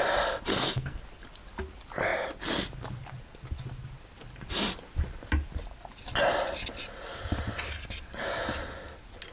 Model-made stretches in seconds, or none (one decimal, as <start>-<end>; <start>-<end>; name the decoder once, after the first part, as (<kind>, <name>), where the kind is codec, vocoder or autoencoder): 0.5-1.0 (codec, SNAC)